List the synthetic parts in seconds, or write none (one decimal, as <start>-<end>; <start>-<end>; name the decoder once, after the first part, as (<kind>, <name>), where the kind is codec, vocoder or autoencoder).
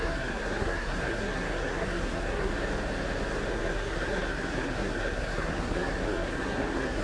0.0-2.5 (codec, SNAC); 3.5-7.0